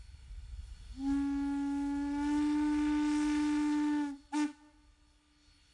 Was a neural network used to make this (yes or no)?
no